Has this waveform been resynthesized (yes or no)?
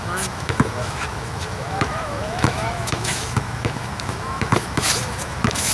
yes